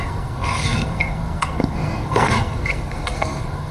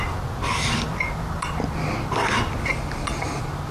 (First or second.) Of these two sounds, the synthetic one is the first